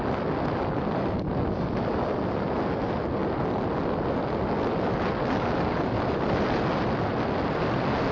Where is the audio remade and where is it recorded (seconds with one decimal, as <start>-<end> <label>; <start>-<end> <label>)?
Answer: 0.0-8.1 recorded